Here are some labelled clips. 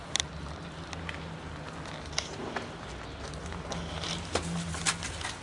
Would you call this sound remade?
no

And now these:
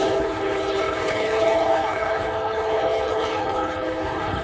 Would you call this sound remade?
yes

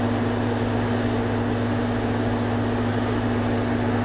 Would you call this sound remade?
no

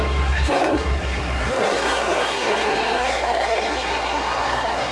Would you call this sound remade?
yes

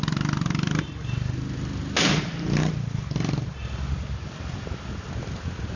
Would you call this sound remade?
no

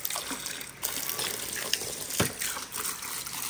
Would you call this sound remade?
no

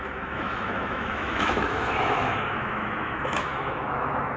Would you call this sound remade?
yes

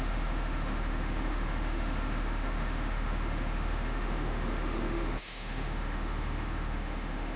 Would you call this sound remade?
yes